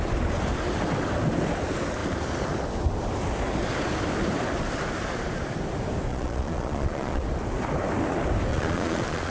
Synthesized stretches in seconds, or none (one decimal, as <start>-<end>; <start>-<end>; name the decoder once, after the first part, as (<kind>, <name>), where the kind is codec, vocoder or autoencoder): 6.1-7.2 (vocoder, Vocos); 8.5-9.3